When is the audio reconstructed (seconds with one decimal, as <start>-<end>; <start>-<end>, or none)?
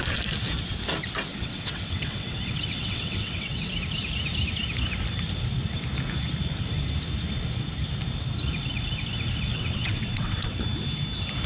1.3-3.7; 9.5-10.6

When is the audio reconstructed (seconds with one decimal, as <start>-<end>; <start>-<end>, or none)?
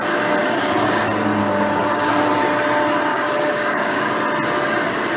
0.4-1.0; 1.4-2.1; 3.1-4.1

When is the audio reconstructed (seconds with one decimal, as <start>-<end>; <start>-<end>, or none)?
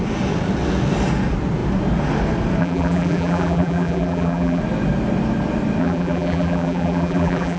2.6-4.6; 5.8-7.6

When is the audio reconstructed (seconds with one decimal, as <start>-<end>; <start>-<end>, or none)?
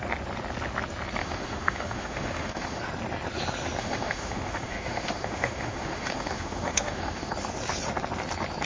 1.2-2.8; 3.8-7.3